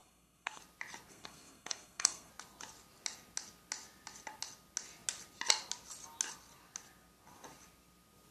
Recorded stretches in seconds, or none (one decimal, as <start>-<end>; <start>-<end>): 0.6-1.1; 2.3-8.3